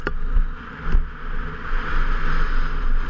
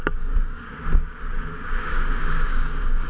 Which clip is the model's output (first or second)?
second